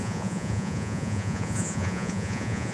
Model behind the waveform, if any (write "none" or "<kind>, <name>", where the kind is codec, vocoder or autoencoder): vocoder, Vocos